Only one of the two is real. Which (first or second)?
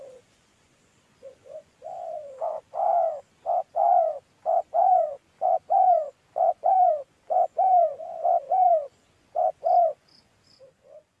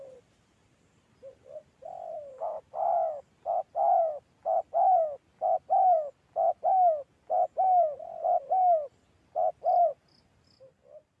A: second